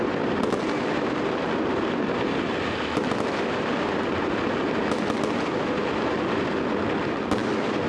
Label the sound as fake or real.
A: real